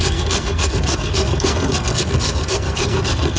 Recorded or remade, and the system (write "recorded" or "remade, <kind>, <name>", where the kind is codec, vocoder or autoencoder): remade, codec, SNAC